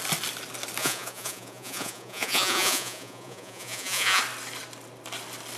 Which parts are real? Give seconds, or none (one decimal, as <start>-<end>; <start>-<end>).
0.0-0.8; 4.2-5.6